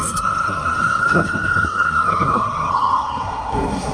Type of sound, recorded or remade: remade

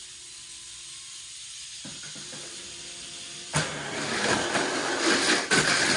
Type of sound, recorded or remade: recorded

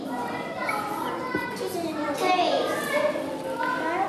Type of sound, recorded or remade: recorded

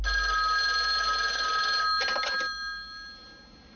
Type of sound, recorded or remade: recorded